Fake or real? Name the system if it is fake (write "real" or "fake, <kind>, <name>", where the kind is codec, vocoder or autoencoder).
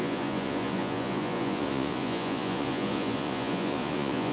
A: fake, vocoder, Vocos